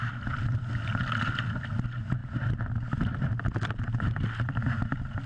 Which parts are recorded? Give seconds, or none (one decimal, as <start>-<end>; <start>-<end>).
0.0-5.3